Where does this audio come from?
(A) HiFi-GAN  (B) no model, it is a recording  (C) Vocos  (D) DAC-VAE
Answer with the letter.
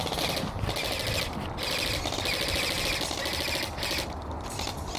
B